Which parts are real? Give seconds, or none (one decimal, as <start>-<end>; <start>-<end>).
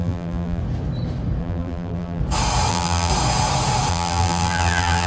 0.6-1.4; 2.2-2.7; 3.1-3.9